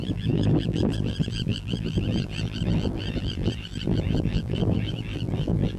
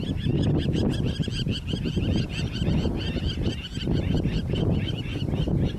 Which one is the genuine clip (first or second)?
second